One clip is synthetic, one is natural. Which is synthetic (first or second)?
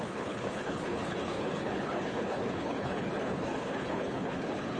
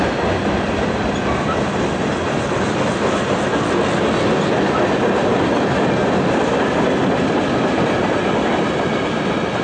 first